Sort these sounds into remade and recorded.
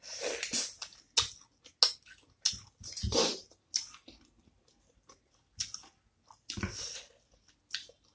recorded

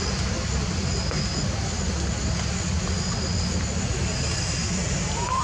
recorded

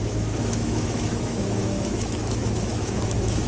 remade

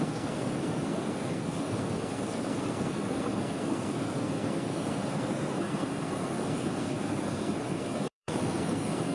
remade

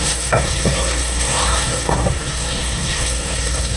remade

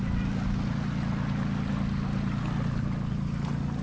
recorded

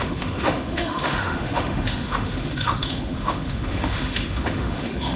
remade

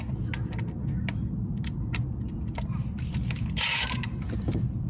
recorded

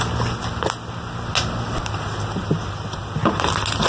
recorded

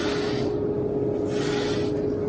recorded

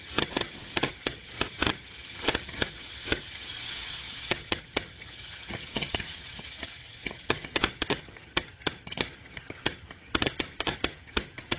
remade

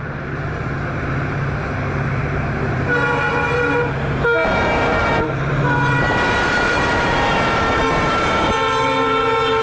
remade